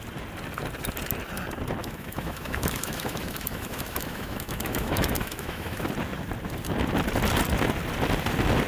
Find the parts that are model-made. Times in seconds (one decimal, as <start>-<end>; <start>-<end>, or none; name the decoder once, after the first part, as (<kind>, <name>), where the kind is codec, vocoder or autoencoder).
1.8-5.9 (autoencoder, DAC-VAE)